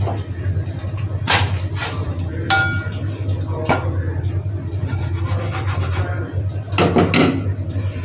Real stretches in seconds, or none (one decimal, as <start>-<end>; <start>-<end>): 0.0-1.8; 2.3-8.0